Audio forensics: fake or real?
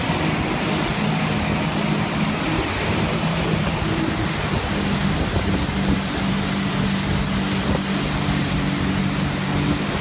real